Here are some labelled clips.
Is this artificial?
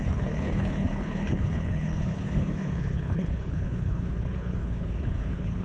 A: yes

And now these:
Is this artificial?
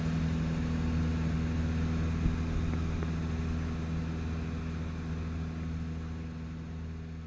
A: no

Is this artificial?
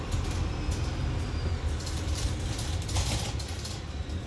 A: yes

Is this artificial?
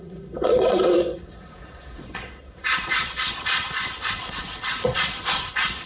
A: yes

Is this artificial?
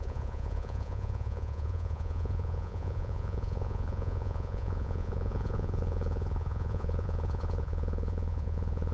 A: yes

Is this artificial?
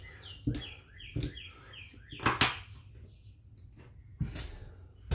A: no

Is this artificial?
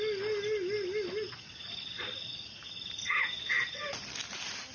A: no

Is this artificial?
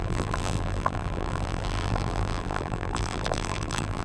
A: yes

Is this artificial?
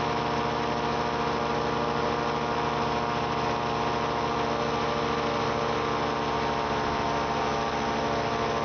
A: no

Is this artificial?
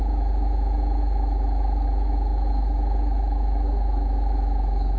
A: yes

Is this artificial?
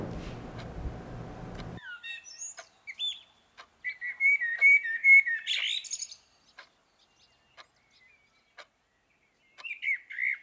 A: no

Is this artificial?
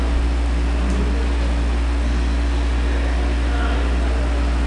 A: no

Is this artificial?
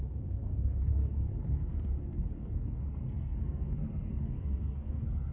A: yes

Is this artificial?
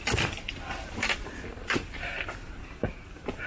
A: no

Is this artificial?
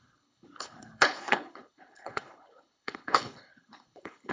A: yes